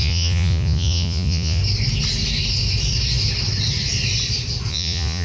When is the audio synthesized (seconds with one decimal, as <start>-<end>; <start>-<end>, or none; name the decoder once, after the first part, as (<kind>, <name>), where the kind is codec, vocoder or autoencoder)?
0.0-1.6 (vocoder, Vocos); 4.7-5.2